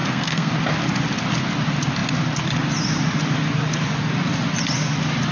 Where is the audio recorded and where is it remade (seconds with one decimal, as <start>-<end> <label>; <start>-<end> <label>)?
0.0-0.5 remade; 0.5-5.3 recorded